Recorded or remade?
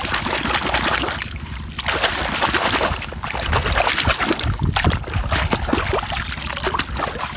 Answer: recorded